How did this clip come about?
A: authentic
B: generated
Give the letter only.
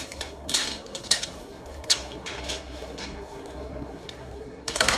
B